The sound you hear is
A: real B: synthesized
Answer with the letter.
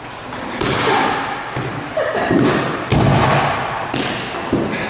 A